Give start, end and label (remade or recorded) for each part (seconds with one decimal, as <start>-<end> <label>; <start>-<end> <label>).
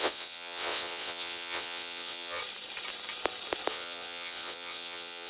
0.0-2.4 remade; 2.4-3.7 recorded; 3.7-5.3 remade